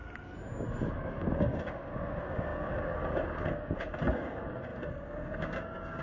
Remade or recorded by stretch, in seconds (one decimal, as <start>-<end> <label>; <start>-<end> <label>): 0.0-0.9 recorded; 0.9-6.0 remade